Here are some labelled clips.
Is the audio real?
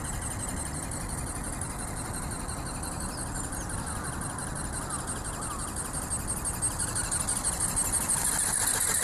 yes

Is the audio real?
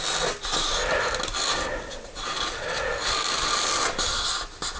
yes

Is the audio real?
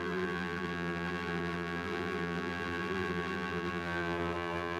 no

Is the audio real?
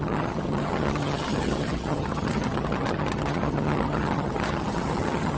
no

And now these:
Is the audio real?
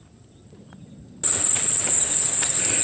yes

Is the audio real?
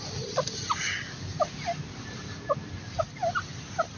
yes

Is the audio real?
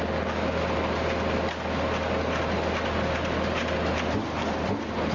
yes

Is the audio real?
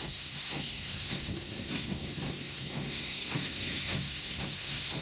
no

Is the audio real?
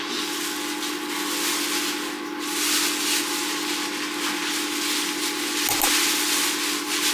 yes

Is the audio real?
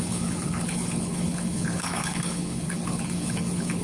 no